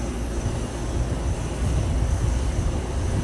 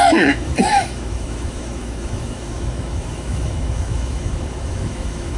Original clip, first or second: first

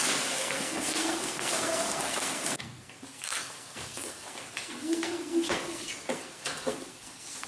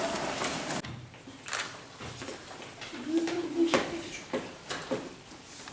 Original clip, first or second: second